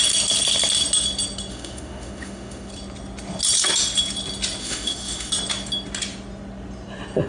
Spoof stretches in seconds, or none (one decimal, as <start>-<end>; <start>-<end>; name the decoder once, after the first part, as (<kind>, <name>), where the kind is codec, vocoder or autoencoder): 1.5-2.7 (autoencoder, DAC-VAE); 4.6-5.3